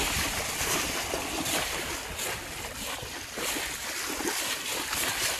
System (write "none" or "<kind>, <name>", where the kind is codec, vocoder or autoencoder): none